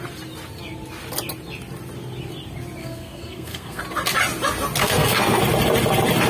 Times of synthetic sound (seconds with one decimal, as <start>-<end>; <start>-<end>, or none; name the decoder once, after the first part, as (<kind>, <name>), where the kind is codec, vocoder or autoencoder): 2.8-3.8 (codec, SNAC); 4.8-5.4